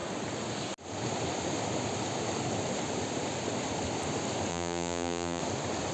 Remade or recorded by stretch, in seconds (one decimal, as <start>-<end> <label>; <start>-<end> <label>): 0.0-4.5 recorded; 4.5-5.4 remade; 5.4-5.9 recorded

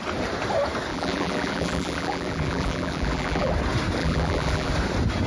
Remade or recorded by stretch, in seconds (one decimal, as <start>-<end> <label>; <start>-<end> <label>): 0.0-0.9 recorded; 0.9-3.5 remade; 3.5-4.0 recorded; 4.0-4.7 remade; 4.7-5.3 recorded